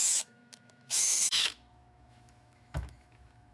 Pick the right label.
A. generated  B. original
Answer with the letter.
A